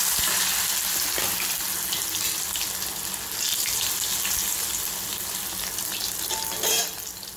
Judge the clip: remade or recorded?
recorded